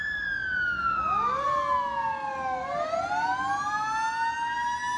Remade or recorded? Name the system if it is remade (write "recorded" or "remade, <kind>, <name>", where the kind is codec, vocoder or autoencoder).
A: recorded